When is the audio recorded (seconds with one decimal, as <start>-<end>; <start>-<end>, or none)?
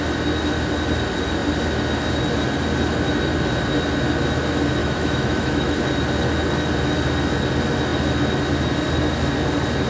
0.0-4.8; 5.8-9.9